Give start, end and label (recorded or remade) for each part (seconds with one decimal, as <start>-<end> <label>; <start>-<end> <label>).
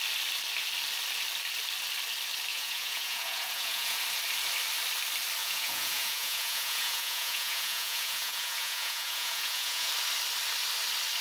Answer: 0.0-2.5 recorded; 2.5-4.0 remade; 4.0-5.4 recorded; 5.4-9.9 remade; 9.9-11.2 recorded